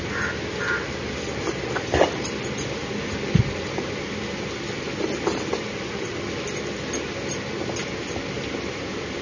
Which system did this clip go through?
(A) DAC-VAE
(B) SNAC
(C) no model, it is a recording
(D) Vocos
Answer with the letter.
C